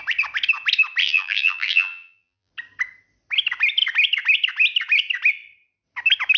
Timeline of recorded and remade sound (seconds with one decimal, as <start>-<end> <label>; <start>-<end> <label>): 0.0-1.0 recorded; 1.0-2.5 remade; 2.5-6.4 recorded